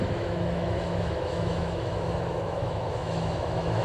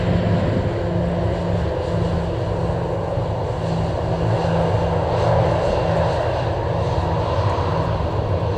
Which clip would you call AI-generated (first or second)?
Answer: first